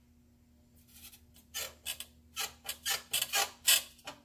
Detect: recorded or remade recorded